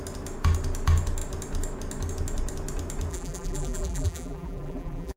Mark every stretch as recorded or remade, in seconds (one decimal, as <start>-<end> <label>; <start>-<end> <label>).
0.0-3.1 recorded; 3.1-5.2 remade